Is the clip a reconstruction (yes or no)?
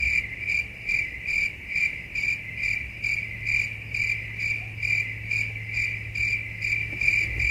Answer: no